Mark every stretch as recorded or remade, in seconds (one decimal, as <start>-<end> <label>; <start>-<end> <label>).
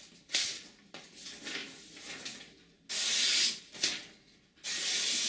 0.0-5.3 recorded